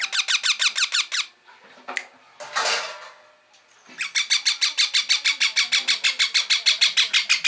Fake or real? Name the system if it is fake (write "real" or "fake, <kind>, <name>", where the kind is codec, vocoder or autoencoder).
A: real